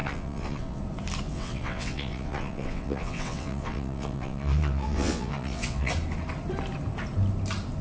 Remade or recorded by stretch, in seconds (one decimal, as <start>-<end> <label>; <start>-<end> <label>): 0.0-0.8 remade; 0.8-1.3 recorded; 1.3-5.9 remade; 5.9-7.8 recorded